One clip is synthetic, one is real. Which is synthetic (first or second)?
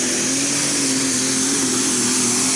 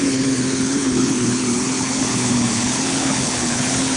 second